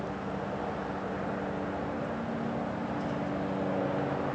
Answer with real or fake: real